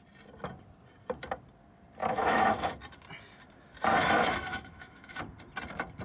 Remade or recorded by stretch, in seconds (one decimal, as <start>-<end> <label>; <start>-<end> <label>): 0.0-2.0 recorded; 2.0-2.7 remade; 2.7-4.0 recorded; 4.0-5.2 remade; 5.2-6.0 recorded